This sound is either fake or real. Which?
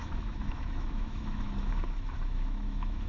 fake